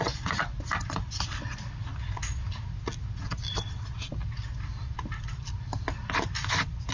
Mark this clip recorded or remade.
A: recorded